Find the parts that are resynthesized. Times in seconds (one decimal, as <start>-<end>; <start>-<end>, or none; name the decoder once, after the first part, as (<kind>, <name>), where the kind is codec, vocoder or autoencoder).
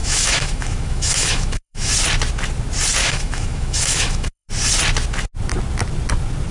0.0-1.9 (autoencoder, DAC-VAE); 3.0-4.5